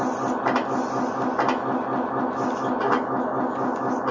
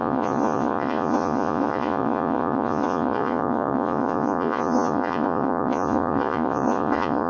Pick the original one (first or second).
first